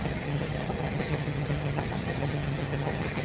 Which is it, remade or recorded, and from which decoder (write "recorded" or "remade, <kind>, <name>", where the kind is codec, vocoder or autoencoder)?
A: remade, vocoder, HiFi-GAN